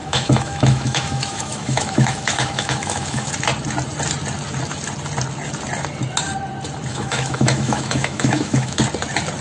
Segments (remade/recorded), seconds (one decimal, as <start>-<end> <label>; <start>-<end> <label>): 0.0-3.3 remade; 3.3-6.9 recorded; 6.9-8.8 remade; 8.8-9.4 recorded